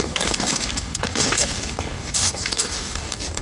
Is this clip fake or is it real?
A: fake